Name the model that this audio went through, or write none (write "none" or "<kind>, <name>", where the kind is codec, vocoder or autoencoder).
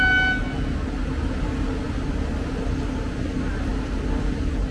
none